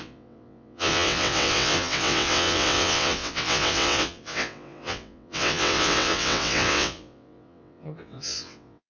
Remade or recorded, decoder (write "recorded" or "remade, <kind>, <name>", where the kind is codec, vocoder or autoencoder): remade, vocoder, WaveNeXt